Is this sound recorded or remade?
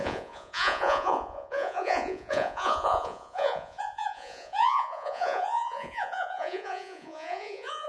remade